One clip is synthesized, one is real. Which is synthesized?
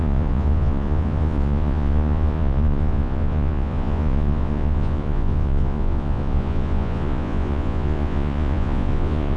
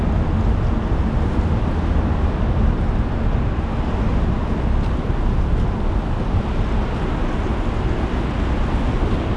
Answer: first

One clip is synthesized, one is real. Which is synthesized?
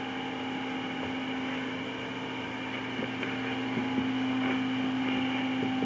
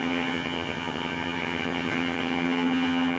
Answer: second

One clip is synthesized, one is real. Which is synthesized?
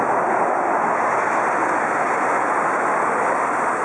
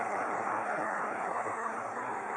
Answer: second